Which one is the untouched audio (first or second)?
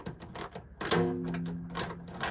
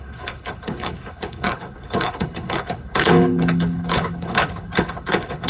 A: first